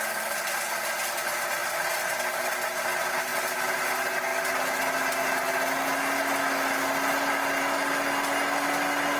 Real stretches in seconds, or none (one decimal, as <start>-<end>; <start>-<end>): 0.0-9.2